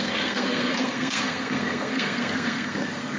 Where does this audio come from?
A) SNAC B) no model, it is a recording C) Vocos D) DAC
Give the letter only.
A